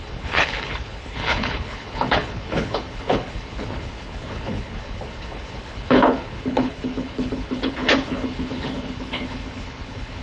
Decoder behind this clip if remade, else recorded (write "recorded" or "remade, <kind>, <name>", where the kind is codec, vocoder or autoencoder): remade, codec, HILCodec